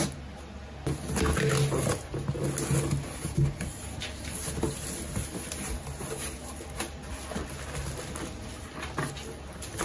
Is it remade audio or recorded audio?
recorded